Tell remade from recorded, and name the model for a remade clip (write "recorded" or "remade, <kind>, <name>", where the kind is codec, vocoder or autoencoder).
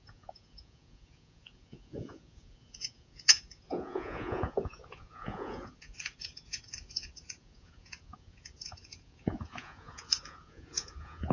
remade, vocoder, Vocos